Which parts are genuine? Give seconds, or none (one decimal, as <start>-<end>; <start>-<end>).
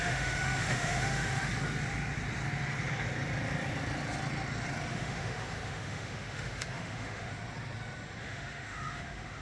1.5-4.9; 7.3-8.2